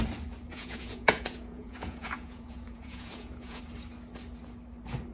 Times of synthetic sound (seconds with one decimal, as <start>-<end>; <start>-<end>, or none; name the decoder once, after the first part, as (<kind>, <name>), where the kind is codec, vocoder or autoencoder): 0.5-3.6 (vocoder, Vocos)